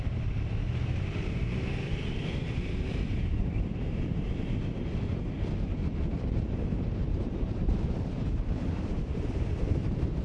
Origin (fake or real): fake